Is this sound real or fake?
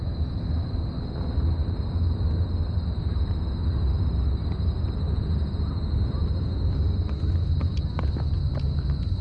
real